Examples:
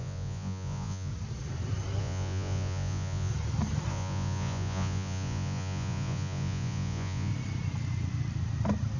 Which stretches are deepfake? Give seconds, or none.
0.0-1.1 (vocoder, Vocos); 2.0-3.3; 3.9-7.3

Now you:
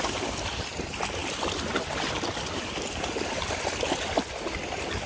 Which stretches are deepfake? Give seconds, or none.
none

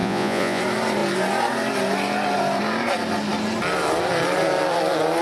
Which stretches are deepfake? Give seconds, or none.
0.0-0.6 (vocoder, Vocos)

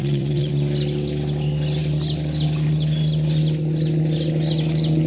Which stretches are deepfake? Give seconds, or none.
0.0-0.5 (vocoder, Vocos)

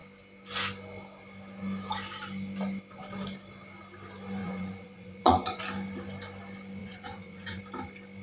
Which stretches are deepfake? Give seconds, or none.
4.4-5.6 (vocoder, Vocos); 6.8-7.6

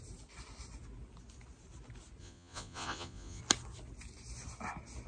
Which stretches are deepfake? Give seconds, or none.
2.2-3.4 (vocoder, Vocos)

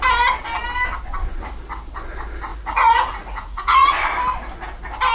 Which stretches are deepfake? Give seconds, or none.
2.5-3.9 (vocoder, Vocos)